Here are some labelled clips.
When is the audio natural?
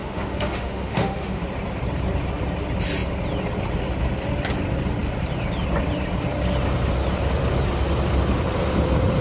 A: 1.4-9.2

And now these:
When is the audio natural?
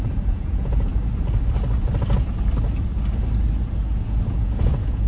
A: 0.9-4.0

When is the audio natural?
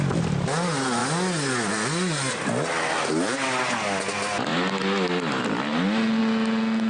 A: 0.0-6.9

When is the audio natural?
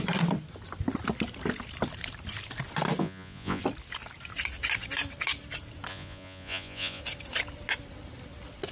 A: 0.0-3.0; 3.6-5.9; 7.0-8.7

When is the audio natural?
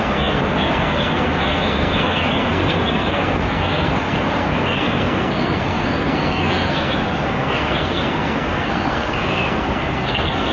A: none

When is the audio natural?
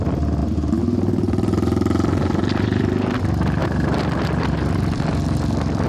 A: 0.4-2.4; 3.6-4.4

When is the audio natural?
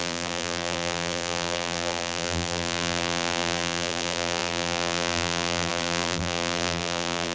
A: none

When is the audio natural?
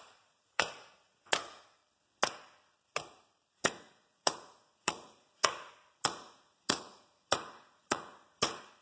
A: 1.8-3.5